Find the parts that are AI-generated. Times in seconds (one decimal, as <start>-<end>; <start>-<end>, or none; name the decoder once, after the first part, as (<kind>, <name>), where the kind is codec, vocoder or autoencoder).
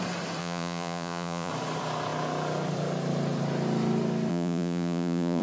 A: 0.4-1.5 (vocoder, Vocos); 4.3-5.4